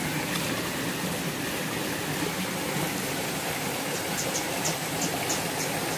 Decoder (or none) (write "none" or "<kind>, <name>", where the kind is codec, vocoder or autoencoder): none